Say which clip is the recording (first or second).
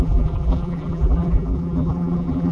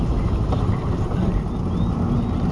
second